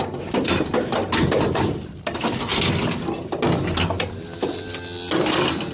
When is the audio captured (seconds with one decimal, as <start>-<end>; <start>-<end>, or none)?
0.0-5.7